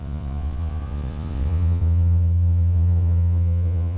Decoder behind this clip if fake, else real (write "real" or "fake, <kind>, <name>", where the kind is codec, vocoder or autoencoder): fake, vocoder, Vocos